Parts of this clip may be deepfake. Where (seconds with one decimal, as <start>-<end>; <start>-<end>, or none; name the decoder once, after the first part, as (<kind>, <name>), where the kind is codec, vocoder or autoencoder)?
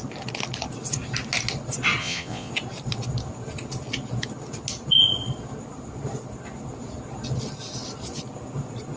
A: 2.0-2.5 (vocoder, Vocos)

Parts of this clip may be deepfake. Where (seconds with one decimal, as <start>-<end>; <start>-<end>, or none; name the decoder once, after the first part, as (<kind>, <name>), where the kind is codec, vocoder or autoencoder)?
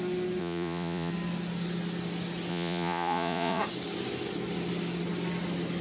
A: 0.4-1.1 (vocoder, Vocos); 2.5-3.6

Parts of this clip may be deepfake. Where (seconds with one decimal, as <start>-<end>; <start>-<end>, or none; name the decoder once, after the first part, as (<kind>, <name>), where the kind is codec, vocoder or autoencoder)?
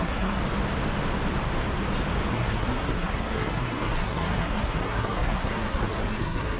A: 0.0-0.4 (codec, SNAC); 2.3-6.6